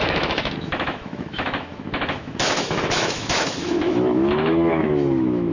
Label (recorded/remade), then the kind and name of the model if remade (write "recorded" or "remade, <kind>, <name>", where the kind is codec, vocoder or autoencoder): remade, autoencoder, DAC-VAE